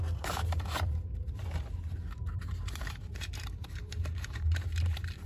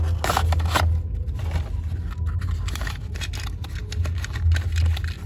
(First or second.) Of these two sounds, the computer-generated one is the first